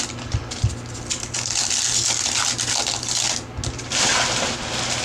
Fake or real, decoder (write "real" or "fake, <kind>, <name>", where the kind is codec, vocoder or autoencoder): real